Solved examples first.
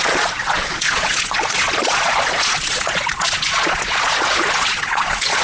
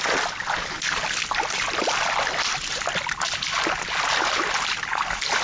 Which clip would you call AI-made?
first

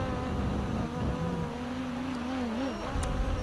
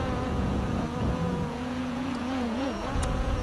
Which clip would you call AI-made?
second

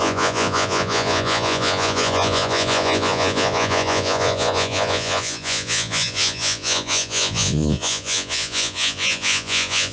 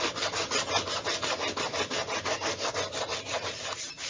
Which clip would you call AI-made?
first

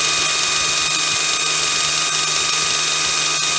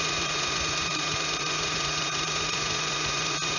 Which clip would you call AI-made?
second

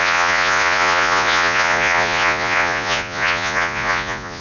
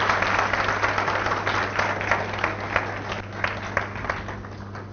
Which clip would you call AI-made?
first